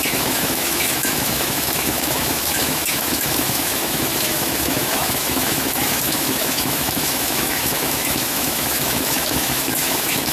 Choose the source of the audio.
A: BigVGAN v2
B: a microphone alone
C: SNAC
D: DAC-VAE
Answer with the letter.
D